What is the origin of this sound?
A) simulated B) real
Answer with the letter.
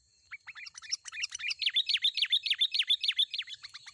B